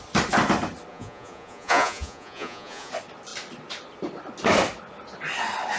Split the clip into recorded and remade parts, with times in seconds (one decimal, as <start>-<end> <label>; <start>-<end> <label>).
0.0-0.9 recorded; 0.9-2.9 remade; 2.9-5.8 recorded